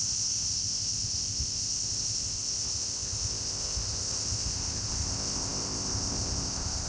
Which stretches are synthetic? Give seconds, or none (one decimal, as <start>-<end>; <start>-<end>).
0.0-6.9